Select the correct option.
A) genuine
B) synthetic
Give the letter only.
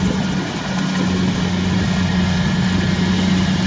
A